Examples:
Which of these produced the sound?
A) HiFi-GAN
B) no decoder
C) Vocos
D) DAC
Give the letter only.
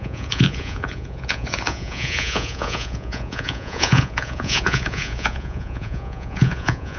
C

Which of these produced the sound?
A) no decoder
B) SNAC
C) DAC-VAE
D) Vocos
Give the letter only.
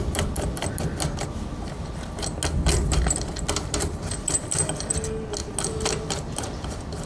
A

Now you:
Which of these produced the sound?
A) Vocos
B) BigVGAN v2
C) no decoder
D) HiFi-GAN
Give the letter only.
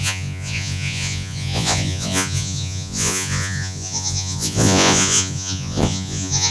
A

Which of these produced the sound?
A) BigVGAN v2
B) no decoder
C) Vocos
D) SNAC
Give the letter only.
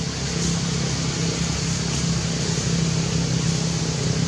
B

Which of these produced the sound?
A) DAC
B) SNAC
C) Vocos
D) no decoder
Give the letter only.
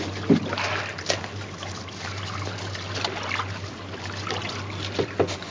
D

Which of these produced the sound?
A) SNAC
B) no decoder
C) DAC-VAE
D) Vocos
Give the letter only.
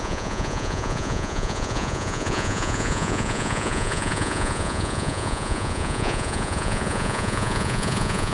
D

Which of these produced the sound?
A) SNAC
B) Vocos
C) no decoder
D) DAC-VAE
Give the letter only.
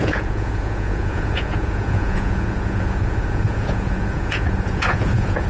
B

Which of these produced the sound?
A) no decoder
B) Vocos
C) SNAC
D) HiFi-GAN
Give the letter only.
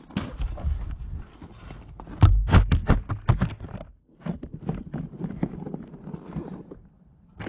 A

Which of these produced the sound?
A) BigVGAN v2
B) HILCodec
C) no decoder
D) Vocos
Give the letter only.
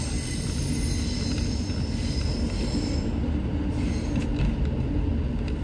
C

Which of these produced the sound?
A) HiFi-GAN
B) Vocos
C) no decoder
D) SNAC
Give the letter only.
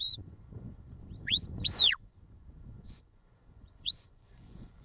B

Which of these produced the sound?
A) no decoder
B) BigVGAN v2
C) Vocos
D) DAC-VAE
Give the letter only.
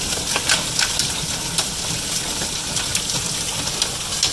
A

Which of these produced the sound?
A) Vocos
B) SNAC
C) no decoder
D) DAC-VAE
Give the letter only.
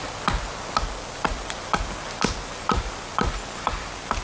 C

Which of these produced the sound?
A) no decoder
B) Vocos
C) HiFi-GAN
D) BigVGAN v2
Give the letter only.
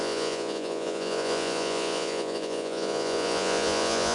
B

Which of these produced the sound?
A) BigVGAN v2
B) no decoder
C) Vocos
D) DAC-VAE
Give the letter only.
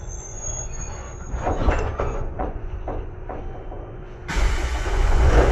C